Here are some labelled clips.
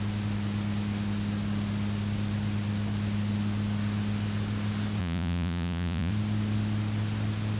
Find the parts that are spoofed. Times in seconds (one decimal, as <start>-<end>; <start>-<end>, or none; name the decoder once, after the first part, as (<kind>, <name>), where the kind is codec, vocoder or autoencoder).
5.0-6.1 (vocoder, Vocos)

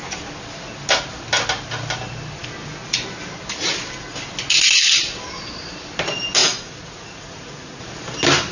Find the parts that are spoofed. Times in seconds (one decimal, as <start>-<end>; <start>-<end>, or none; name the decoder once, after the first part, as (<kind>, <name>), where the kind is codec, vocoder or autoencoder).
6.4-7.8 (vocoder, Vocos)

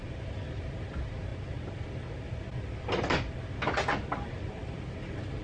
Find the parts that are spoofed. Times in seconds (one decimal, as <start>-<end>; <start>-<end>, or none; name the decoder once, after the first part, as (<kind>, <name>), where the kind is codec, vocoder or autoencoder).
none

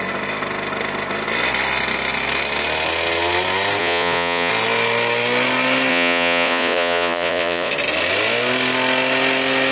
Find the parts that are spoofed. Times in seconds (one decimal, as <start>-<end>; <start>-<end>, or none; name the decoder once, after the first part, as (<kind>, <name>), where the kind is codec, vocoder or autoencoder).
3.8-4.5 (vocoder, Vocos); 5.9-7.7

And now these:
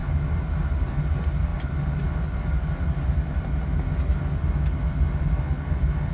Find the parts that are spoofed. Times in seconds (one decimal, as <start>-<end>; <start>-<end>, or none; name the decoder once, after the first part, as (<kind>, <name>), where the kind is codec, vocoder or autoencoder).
none

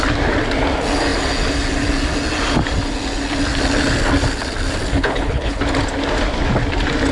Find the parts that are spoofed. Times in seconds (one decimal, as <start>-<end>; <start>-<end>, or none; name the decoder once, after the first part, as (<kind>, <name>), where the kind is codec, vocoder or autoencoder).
4.9-5.6 (codec, HILCodec)

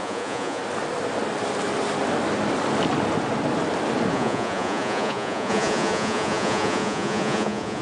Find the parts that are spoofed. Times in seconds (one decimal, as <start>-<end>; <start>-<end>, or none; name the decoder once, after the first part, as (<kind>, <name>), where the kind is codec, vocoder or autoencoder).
0.0-0.6 (vocoder, Vocos); 4.1-7.8

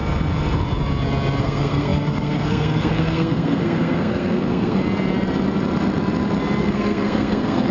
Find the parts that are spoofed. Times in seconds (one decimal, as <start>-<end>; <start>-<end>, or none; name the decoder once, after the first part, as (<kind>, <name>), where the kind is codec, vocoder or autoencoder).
1.4-4.8 (codec, SNAC); 6.6-7.7